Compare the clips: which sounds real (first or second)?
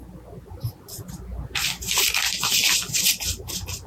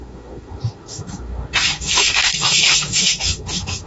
first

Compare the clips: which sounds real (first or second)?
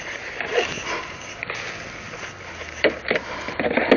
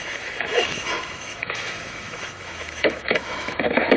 first